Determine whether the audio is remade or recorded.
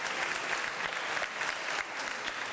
remade